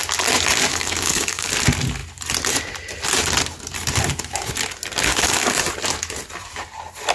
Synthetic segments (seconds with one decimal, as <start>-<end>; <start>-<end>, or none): 0.7-1.5; 5.1-5.6